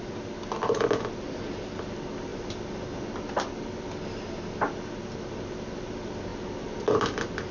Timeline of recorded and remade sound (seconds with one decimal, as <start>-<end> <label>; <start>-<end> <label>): 0.0-7.5 recorded